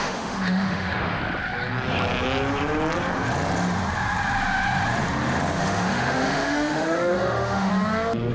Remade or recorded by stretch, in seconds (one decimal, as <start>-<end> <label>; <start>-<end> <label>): 0.0-1.2 remade; 1.2-5.6 recorded; 5.6-7.7 remade; 7.7-8.3 recorded